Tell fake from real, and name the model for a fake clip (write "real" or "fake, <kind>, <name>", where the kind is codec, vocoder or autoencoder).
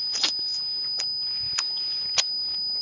real